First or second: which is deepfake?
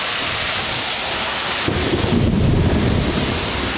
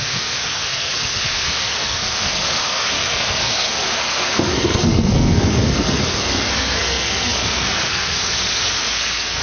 second